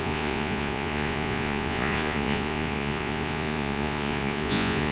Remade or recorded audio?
remade